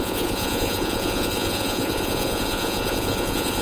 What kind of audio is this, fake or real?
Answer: fake